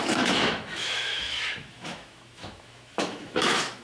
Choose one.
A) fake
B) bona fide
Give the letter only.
A